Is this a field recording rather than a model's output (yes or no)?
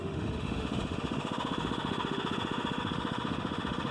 no